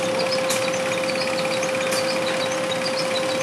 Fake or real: real